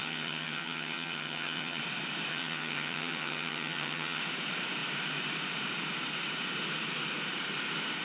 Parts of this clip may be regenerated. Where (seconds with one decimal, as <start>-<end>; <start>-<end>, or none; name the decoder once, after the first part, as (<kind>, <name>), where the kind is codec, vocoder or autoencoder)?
0.0-1.8 (vocoder, HiFi-GAN); 2.3-4.2